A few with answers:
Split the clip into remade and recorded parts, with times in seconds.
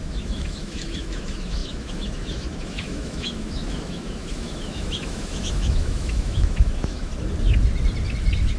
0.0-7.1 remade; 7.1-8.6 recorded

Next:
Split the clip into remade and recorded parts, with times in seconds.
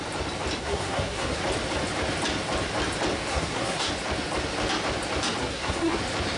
0.0-0.6 recorded; 0.6-1.4 remade; 1.4-3.3 recorded; 3.3-3.9 remade; 3.9-5.4 recorded; 5.4-6.0 remade; 6.0-6.4 recorded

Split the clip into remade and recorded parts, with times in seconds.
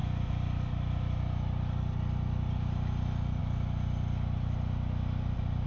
0.0-3.4 remade; 3.4-5.7 recorded